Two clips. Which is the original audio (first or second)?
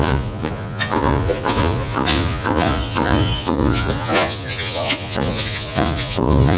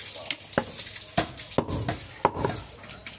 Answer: second